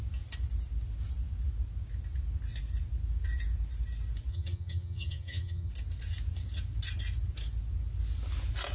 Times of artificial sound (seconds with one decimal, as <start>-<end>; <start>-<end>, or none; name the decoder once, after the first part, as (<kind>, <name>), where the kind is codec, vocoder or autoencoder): 4.3-5.7 (vocoder, HiFi-GAN)